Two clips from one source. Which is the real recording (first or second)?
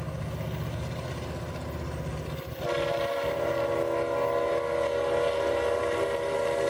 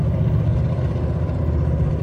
first